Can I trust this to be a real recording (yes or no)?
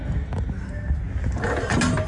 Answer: yes